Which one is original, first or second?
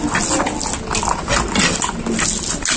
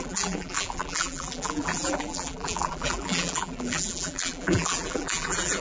first